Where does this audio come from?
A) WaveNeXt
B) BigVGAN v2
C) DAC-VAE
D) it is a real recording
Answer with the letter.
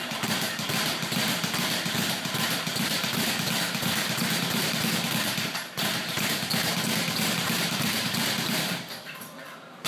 B